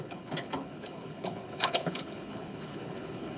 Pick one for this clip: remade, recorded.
remade